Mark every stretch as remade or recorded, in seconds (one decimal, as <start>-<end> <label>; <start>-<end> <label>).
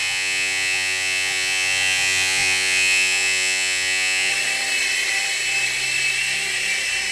0.0-4.3 remade; 4.3-7.1 recorded